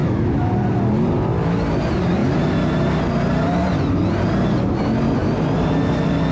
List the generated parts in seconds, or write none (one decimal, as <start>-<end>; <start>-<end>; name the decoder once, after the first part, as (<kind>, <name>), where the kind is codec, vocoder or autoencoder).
0.0-0.5 (autoencoder, DAC-VAE)